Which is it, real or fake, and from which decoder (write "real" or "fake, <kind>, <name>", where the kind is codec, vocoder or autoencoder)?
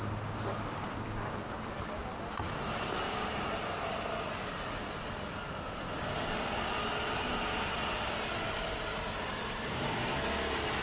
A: real